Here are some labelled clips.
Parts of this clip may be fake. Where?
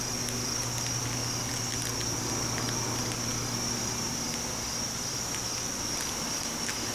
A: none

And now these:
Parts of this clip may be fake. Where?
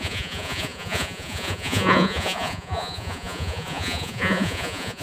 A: 0.0-5.0 (vocoder, Vocos)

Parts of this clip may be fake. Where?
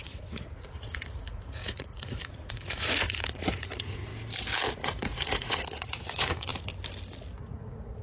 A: 0.0-4.1 (vocoder, Vocos); 4.7-6.5; 7.4-8.0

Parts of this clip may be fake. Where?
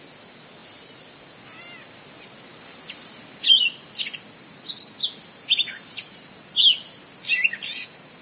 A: none